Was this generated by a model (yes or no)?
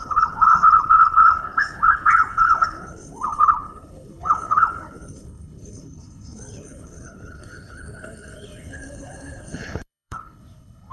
yes